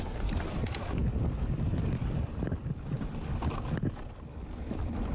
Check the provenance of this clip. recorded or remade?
recorded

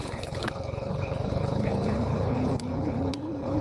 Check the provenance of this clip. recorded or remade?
remade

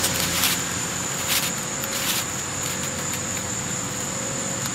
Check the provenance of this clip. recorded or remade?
recorded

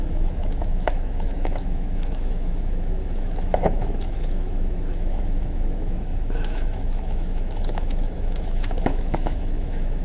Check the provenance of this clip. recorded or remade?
remade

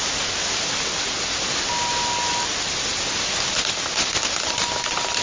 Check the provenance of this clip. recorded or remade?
recorded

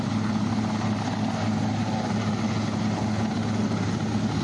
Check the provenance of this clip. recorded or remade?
recorded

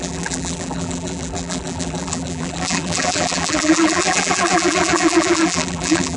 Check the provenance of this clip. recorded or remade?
remade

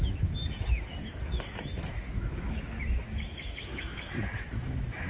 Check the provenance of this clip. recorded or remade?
remade